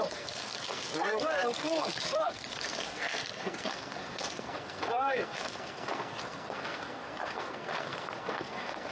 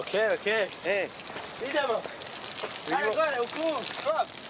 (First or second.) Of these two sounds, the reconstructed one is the first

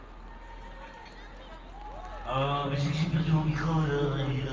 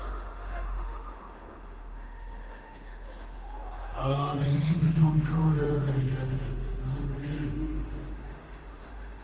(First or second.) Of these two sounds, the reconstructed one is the second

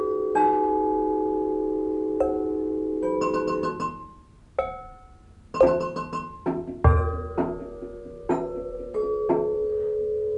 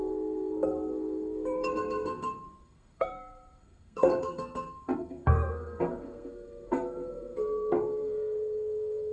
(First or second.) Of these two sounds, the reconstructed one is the second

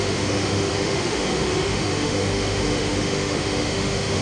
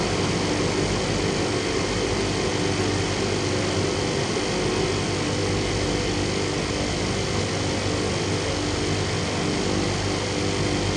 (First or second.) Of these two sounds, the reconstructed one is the first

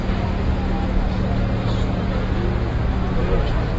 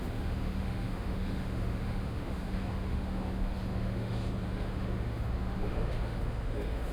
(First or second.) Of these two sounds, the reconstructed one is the second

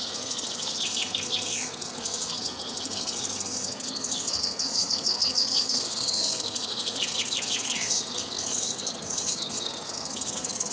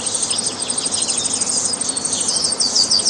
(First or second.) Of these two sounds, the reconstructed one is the first